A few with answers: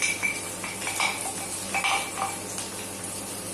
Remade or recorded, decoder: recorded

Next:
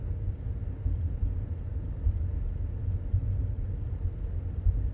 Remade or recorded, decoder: recorded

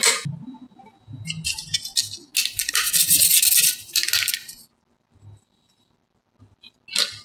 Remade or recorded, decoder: recorded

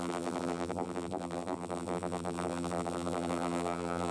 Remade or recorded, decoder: remade, vocoder, BigVGAN v2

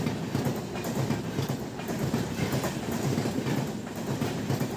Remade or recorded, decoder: recorded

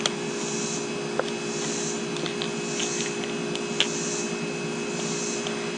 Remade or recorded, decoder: recorded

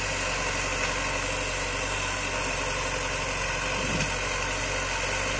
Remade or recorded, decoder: recorded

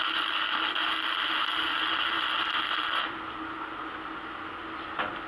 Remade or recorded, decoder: recorded